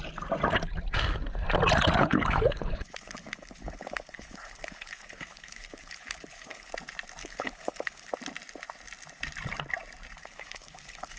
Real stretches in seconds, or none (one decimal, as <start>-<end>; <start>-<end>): 0.0-2.0; 6.7-7.2; 8.1-10.2